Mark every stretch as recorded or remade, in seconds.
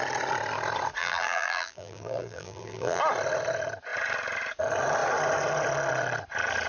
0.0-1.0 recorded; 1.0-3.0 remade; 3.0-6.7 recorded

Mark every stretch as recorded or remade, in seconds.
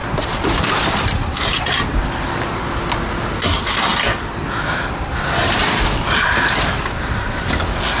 0.0-2.1 remade; 2.1-5.6 recorded; 5.6-7.4 remade; 7.4-8.0 recorded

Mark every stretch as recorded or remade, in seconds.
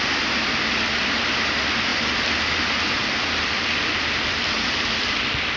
0.0-1.0 recorded; 1.0-1.5 remade; 1.5-5.6 recorded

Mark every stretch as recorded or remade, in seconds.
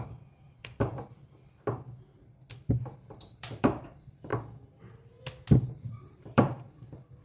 0.0-0.9 remade; 0.9-3.2 recorded; 3.2-4.3 remade; 4.3-5.7 recorded; 5.7-7.2 remade